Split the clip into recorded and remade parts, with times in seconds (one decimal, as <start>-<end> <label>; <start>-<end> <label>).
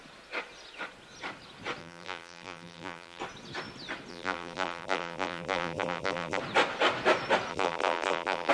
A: 0.0-1.8 recorded; 1.8-3.2 remade; 3.2-4.1 recorded; 4.1-6.4 remade; 6.4-7.5 recorded; 7.5-8.5 remade